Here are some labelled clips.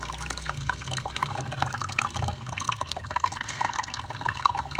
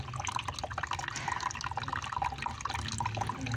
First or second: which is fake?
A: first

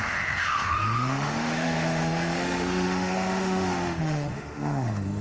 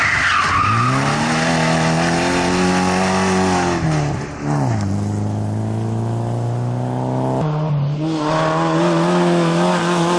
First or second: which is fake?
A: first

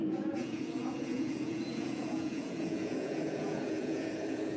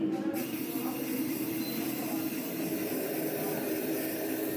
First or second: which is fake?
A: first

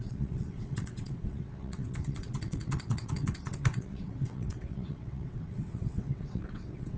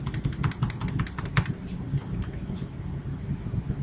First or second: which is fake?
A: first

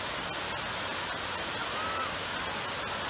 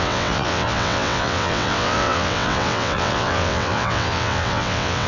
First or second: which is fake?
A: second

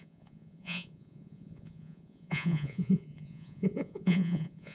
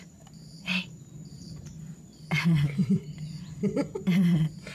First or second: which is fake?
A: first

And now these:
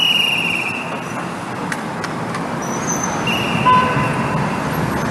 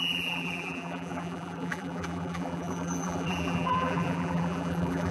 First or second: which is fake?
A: second